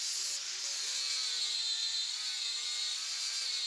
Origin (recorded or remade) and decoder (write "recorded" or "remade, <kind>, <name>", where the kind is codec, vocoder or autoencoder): recorded